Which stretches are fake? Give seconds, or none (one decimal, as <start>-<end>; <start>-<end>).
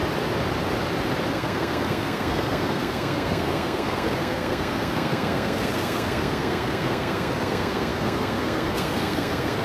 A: 1.3-9.6